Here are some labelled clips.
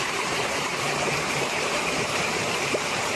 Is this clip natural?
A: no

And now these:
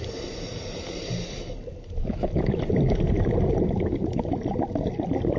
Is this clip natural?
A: yes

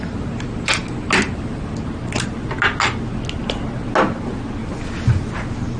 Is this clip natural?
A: yes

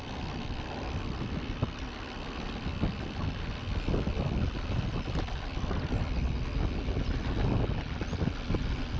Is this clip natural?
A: yes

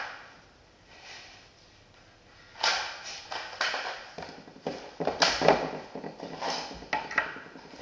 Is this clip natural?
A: yes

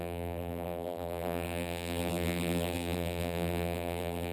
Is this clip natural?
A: no